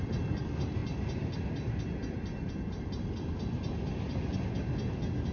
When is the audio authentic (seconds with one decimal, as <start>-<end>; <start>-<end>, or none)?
0.0-5.3